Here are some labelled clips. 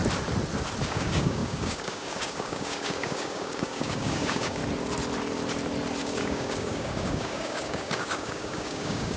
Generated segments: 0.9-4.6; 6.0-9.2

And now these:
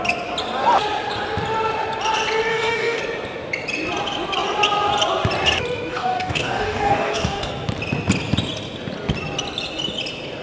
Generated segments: 2.5-3.0; 5.9-7.5

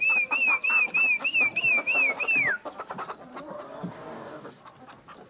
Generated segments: 3.9-4.6

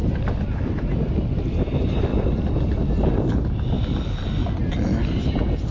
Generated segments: none

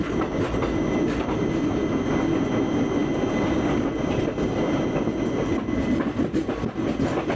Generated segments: none

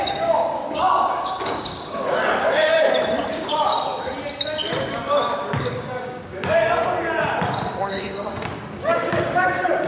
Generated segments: 0.0-2.7; 3.3-3.7; 5.6-6.7; 7.9-9.9